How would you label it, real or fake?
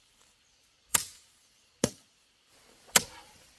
real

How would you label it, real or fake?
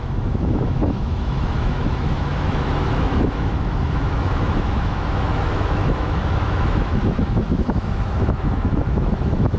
fake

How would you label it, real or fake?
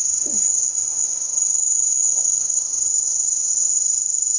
fake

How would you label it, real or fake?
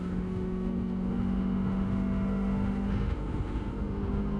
fake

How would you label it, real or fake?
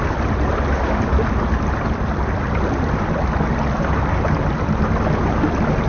real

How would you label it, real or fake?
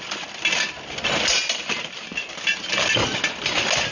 real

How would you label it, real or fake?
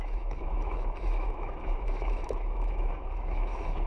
fake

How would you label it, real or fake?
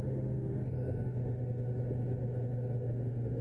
fake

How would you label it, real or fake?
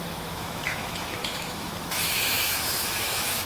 fake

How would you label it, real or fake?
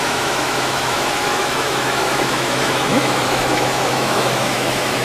fake